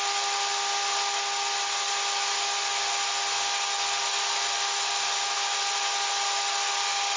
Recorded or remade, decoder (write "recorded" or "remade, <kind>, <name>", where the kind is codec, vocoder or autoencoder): recorded